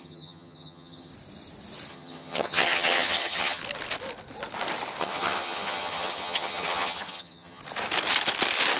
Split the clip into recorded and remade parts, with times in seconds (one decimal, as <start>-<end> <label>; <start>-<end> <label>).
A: 0.0-1.1 remade; 1.1-1.9 recorded; 1.9-3.6 remade; 3.6-5.0 recorded; 5.0-7.6 remade; 7.6-8.8 recorded

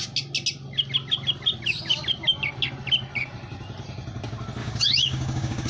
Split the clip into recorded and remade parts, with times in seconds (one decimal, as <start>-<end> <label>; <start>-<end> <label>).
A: 0.0-4.6 recorded; 4.6-5.7 remade

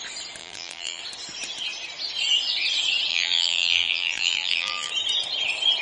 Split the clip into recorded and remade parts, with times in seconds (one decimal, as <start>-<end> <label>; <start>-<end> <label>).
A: 0.0-0.4 recorded; 0.4-1.0 remade; 1.0-3.1 recorded; 3.1-4.9 remade; 4.9-5.8 recorded

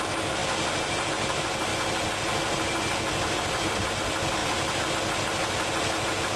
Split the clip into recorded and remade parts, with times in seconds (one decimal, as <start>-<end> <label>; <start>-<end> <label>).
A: 0.0-6.4 recorded

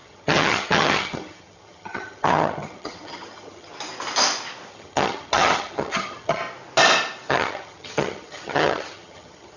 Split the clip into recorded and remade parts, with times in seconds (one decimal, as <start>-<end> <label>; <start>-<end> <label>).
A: 0.0-3.7 remade; 3.7-4.7 recorded; 4.7-6.4 remade; 6.4-7.3 recorded; 7.3-9.6 remade

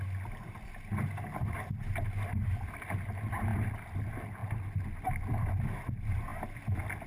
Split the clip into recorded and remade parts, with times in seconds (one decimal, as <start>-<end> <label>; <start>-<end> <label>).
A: 0.0-7.1 recorded

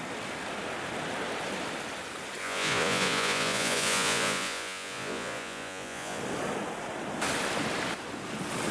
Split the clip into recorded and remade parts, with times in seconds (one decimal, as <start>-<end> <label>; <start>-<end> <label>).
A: 0.0-2.4 recorded; 2.4-6.2 remade; 6.2-8.7 recorded

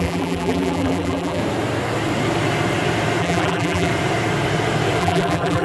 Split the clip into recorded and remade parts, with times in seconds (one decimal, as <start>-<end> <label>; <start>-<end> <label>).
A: 0.0-1.4 remade; 1.4-3.2 recorded; 3.2-3.9 remade; 3.9-5.0 recorded; 5.0-5.6 remade